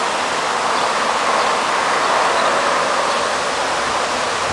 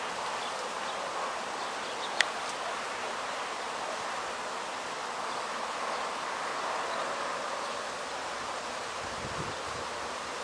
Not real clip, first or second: second